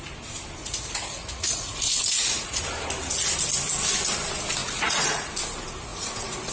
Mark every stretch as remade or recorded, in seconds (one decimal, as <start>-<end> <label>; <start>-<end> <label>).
0.0-0.6 recorded; 0.6-2.6 remade; 2.6-4.6 recorded; 4.6-5.3 remade; 5.3-5.9 recorded; 5.9-6.5 remade